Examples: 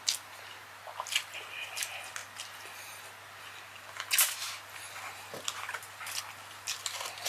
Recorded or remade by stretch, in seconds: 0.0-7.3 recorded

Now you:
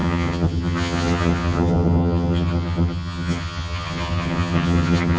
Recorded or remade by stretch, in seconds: 0.0-5.2 remade

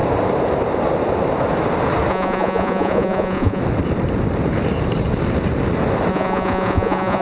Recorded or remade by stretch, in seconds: 0.0-2.1 recorded; 2.1-3.6 remade; 3.6-6.1 recorded; 6.1-7.2 remade

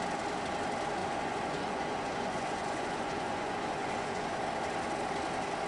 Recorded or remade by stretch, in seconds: 0.0-1.0 recorded; 1.0-4.4 remade; 4.4-5.7 recorded

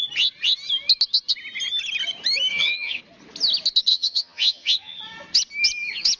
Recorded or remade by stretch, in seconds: 0.0-2.5 recorded; 2.5-3.0 remade; 3.0-3.9 recorded; 3.9-5.0 remade; 5.0-6.2 recorded

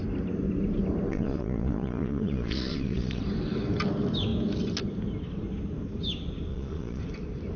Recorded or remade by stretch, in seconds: 0.0-1.1 recorded; 1.1-3.2 remade; 3.2-6.5 recorded; 6.5-7.0 remade; 7.0-7.6 recorded